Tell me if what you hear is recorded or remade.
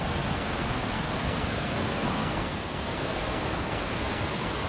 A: remade